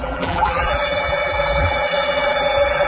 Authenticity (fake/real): fake